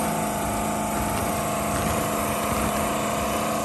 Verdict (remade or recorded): recorded